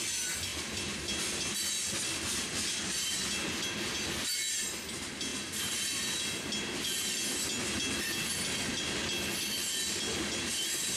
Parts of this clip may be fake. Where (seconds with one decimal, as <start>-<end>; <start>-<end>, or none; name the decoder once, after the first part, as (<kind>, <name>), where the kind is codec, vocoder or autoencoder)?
none